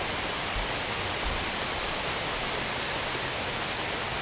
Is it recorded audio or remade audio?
recorded